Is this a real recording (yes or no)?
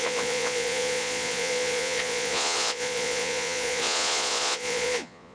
no